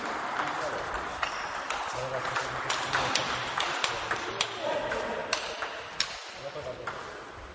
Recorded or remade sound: recorded